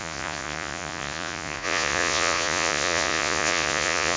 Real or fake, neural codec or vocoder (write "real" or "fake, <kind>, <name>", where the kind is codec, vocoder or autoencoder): fake, vocoder, Vocos